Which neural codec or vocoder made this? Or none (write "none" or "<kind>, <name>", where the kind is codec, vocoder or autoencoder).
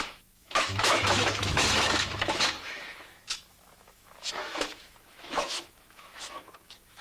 autoencoder, DAC-VAE